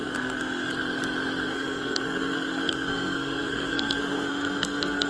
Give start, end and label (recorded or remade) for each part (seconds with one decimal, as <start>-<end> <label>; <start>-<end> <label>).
0.0-0.7 remade; 0.7-1.5 recorded; 1.5-5.1 remade

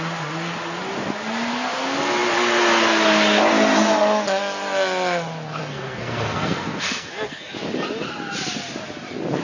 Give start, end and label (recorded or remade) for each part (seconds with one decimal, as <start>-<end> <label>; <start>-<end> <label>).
0.0-5.6 recorded; 5.6-7.5 remade; 7.5-9.4 recorded

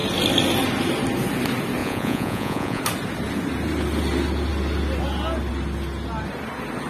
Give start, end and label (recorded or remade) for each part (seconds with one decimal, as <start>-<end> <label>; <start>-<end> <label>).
0.0-1.8 recorded; 1.8-2.8 remade; 2.8-6.9 recorded

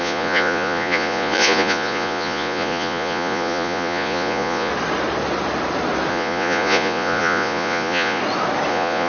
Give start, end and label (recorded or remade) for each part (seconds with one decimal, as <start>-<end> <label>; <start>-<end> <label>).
0.0-4.7 remade; 4.7-6.1 recorded; 6.1-8.2 remade; 8.2-8.7 recorded; 8.7-9.1 remade